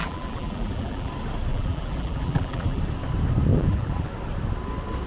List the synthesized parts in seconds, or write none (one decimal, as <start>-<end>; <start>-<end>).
0.0-1.1; 1.5-2.8; 3.5-4.1